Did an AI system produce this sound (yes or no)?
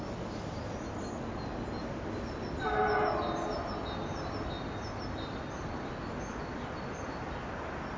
no